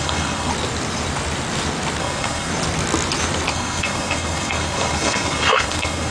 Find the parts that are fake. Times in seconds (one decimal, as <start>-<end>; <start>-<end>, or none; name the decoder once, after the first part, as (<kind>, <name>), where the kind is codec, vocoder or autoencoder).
0.0-0.5 (codec, SNAC); 2.0-2.5; 3.5-6.1